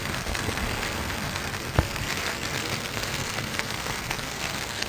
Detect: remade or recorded remade